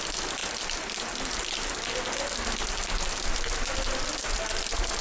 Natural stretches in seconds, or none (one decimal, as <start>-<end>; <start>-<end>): 0.0-0.4; 2.0-5.0